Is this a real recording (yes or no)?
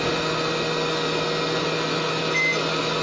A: yes